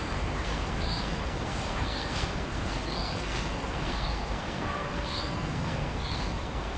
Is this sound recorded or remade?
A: remade